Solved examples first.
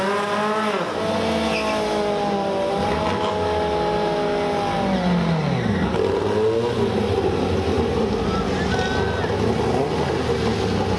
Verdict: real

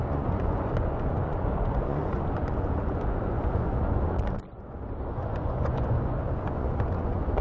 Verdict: fake